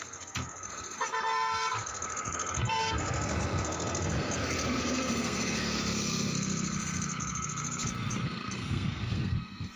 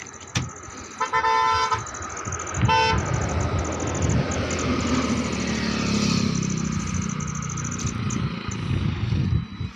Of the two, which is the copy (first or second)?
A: first